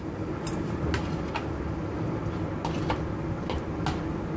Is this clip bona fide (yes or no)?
yes